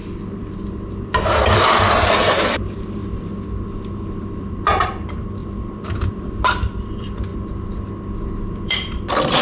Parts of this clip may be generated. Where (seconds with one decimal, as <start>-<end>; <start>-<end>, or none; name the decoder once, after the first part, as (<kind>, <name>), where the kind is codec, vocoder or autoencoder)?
0.0-3.0 (vocoder, BigVGAN v2); 4.1-7.3; 8.6-9.4